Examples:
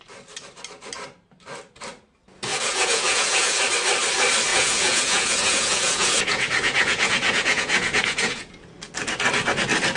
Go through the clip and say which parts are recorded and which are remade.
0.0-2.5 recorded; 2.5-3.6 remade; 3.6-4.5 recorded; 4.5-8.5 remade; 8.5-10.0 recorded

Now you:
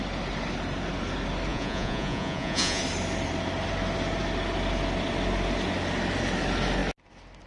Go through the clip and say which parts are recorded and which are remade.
0.0-1.5 recorded; 1.5-2.8 remade; 2.8-7.5 recorded

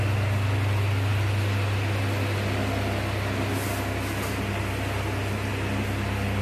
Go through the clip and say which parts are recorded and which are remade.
0.0-6.4 recorded

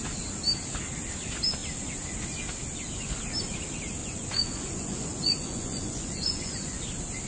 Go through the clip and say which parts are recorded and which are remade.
0.0-4.0 recorded; 4.0-6.8 remade; 6.8-7.3 recorded

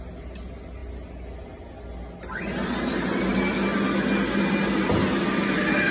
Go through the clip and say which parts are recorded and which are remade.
0.0-5.9 recorded